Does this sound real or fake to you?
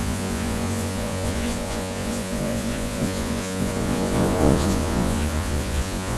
fake